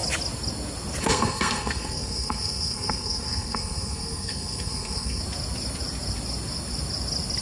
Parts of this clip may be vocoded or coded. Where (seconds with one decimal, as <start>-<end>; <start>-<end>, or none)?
1.0-5.2